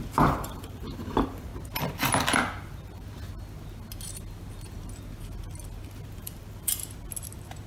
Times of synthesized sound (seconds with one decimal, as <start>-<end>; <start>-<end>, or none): 0.0-1.5; 6.1-6.8

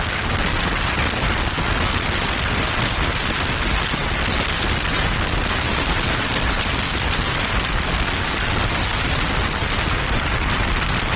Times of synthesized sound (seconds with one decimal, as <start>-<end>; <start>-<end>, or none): none

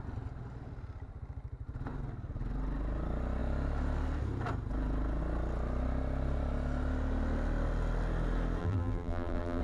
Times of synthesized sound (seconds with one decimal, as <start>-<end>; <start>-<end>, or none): 8.6-9.6

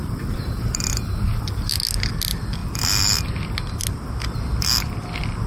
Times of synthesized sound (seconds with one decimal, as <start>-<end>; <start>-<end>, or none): 0.0-0.8